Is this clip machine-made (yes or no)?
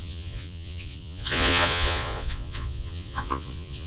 yes